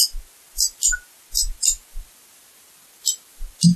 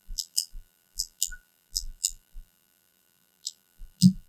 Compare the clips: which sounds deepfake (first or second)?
second